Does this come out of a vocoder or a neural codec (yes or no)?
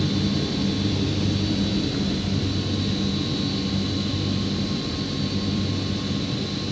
no